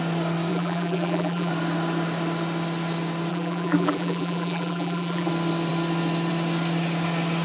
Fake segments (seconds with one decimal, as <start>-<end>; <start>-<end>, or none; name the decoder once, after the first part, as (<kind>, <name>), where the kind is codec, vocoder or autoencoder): 0.5-1.5 (vocoder, BigVGAN v2); 3.3-5.3